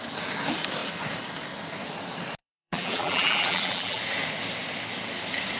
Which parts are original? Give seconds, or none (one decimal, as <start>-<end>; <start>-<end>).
0.0-2.4; 4.0-5.6

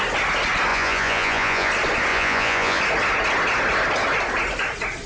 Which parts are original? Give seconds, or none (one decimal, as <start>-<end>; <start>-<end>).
0.0-0.7; 1.7-2.1; 2.8-5.1

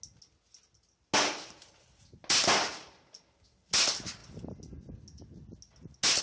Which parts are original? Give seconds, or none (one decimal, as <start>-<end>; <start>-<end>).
0.0-6.2